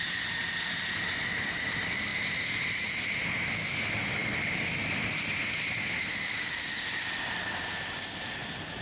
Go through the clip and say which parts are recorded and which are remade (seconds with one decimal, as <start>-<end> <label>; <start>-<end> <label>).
0.0-8.8 recorded